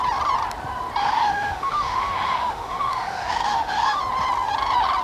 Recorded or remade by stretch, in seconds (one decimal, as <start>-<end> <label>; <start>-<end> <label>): 0.0-1.0 recorded; 1.0-4.0 remade; 4.0-5.0 recorded

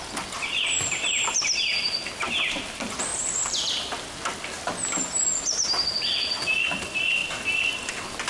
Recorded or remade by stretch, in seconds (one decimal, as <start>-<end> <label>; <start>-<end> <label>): 0.0-8.3 recorded

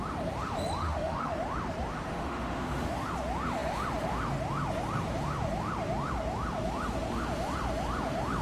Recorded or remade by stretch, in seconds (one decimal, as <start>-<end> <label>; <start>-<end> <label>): 0.0-0.8 recorded; 0.8-1.3 remade; 1.3-2.1 recorded; 2.1-2.9 remade; 2.9-8.4 recorded

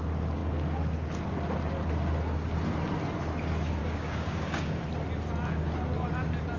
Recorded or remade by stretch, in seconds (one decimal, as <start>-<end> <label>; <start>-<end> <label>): 0.0-3.8 recorded; 3.8-4.8 remade; 4.8-6.6 recorded

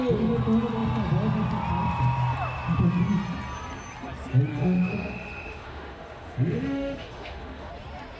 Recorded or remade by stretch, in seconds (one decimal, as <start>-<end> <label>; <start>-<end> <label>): 0.0-4.5 recorded; 4.5-7.7 remade; 7.7-8.2 recorded

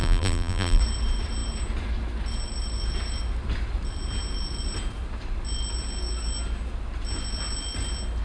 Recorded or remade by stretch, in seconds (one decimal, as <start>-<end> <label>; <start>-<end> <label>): 0.0-0.8 remade; 0.8-8.2 recorded